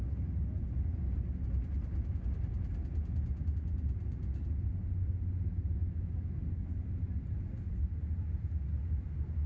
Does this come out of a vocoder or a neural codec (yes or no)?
no